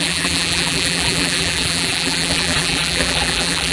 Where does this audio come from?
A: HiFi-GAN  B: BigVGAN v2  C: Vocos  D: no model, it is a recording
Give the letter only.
B